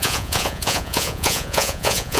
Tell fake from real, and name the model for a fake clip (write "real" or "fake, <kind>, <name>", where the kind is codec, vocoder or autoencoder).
fake, vocoder, Vocos